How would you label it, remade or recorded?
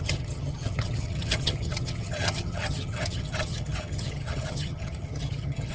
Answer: remade